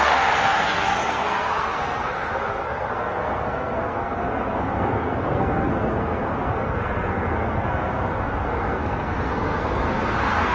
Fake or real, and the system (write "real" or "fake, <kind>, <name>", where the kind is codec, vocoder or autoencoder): fake, codec, SNAC